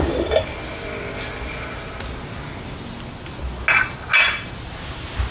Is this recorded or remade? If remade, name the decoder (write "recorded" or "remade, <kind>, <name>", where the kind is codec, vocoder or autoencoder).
recorded